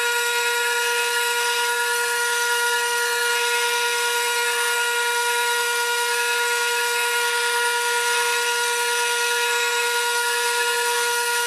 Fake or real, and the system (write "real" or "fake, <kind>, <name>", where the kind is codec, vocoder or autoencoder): fake, codec, SNAC